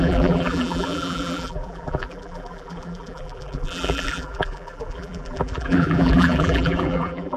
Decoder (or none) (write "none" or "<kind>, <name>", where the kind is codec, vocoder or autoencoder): vocoder, BigVGAN v2